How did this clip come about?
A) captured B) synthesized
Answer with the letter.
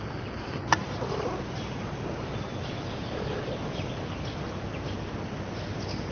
A